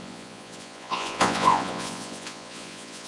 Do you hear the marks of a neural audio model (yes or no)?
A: yes